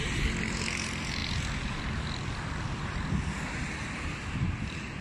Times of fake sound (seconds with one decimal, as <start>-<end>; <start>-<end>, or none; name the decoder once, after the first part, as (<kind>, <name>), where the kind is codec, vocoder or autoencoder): none